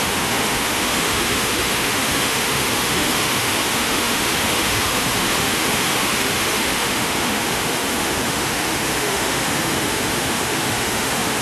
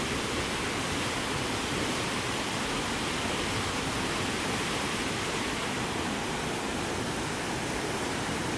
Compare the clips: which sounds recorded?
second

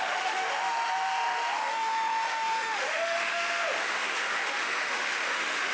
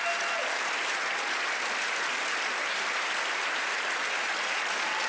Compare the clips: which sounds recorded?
second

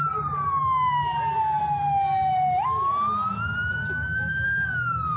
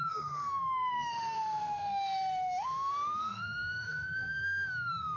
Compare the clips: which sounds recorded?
first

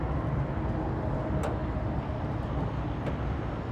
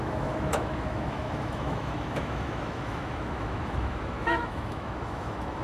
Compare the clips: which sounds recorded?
first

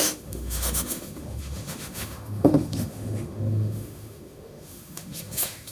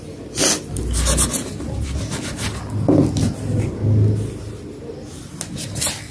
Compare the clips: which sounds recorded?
second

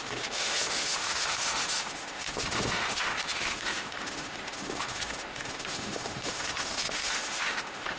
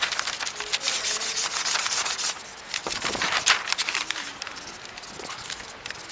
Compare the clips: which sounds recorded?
second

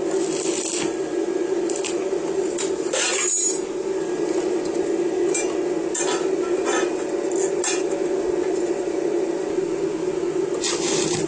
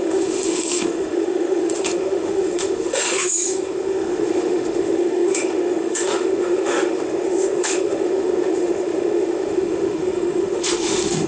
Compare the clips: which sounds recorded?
first